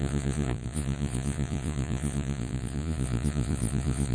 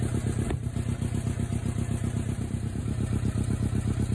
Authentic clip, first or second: second